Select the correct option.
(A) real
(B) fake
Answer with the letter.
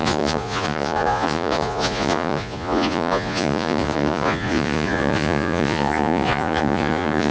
B